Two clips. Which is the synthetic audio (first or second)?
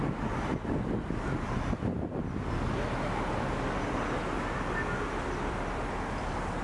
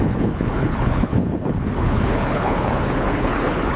second